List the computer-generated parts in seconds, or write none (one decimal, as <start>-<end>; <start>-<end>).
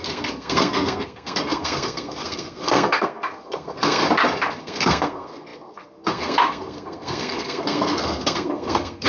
0.0-4.0; 4.6-9.1